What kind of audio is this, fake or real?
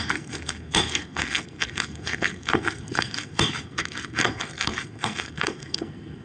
fake